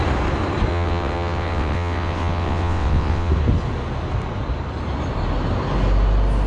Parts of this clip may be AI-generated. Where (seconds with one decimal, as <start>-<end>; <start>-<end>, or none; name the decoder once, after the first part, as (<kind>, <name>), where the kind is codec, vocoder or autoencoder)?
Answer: 0.7-3.3 (vocoder, WaveNeXt)